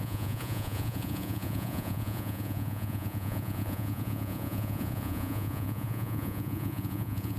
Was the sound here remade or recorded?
remade